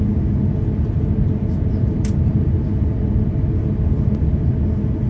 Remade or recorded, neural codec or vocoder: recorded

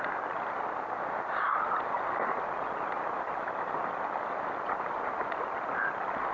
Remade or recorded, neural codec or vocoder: recorded